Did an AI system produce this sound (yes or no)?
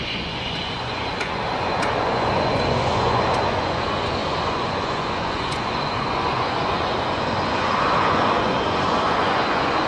yes